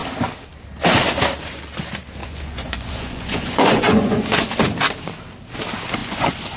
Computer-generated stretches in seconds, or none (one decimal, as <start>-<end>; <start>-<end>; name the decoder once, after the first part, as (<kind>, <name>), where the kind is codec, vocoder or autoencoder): 2.2-4.5 (vocoder, Vocos); 6.0-6.6